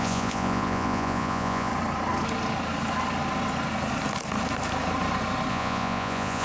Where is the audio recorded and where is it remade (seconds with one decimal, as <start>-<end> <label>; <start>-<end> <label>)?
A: 0.0-1.7 remade; 1.7-5.5 recorded; 5.5-6.4 remade